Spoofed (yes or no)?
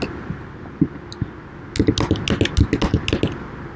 no